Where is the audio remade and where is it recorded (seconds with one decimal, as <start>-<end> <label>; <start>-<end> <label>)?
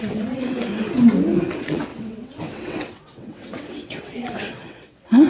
0.0-0.7 remade; 0.7-1.5 recorded; 1.5-5.3 remade